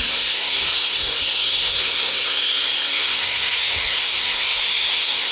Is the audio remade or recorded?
remade